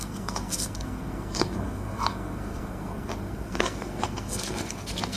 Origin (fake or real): fake